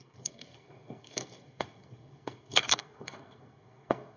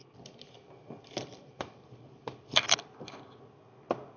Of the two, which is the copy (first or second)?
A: first